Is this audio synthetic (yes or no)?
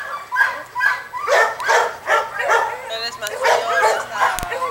no